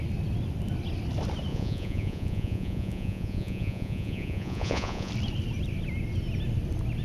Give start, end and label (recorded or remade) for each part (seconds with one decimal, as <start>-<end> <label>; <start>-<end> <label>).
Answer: 0.0-1.5 recorded; 1.5-5.1 remade; 5.1-7.0 recorded